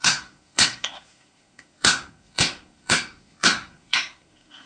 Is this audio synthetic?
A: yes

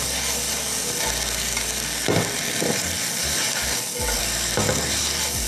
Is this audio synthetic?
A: no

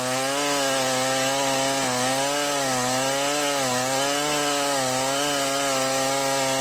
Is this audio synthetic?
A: no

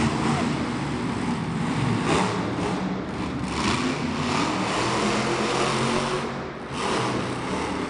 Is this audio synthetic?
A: no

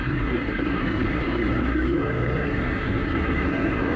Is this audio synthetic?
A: yes